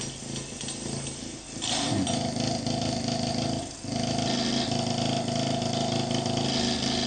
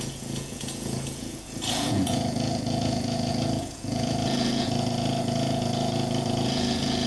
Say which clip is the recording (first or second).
first